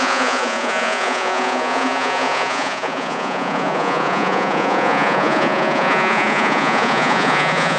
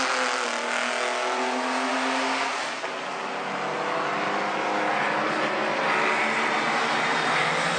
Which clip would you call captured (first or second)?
second